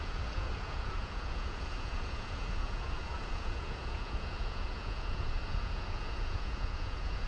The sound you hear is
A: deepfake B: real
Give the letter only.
A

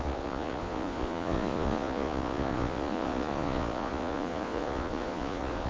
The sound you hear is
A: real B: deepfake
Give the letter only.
B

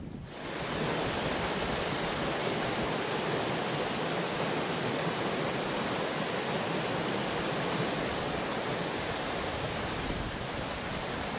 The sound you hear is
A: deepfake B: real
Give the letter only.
B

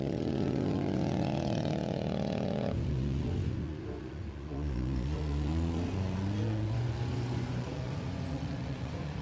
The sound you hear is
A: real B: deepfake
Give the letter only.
B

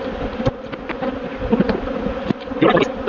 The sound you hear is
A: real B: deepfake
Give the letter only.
A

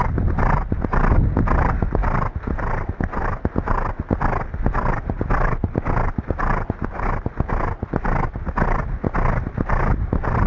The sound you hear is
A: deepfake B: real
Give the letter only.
B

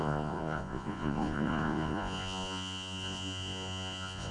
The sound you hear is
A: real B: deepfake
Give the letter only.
B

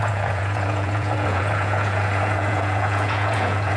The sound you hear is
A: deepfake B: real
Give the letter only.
A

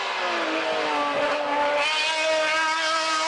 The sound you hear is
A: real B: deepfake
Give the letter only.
A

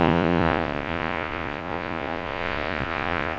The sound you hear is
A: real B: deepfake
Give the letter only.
B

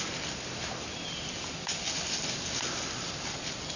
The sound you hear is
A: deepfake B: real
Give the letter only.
B